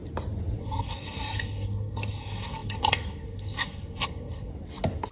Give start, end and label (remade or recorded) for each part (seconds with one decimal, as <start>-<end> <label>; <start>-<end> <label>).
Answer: 0.0-0.6 recorded; 0.6-4.5 remade; 4.5-5.1 recorded